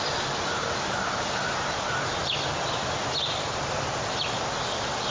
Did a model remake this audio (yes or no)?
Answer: no